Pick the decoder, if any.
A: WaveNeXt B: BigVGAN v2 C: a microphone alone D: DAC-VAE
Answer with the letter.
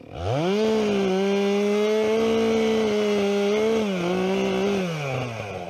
C